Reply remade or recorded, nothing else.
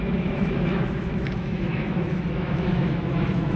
remade